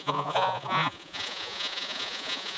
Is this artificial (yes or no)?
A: yes